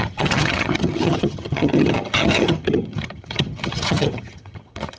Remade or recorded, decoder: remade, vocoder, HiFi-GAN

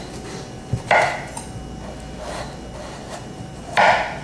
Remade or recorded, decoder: remade, vocoder, BigVGAN v2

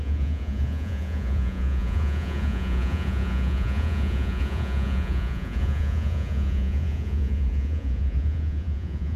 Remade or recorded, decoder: remade, vocoder, Vocos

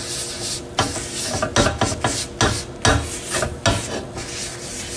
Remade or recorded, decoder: recorded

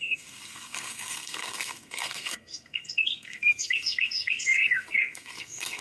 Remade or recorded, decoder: remade, codec, SNAC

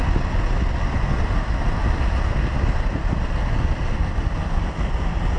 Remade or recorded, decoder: recorded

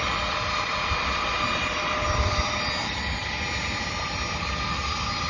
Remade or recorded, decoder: recorded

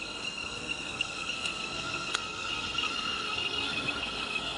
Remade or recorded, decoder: remade, codec, SNAC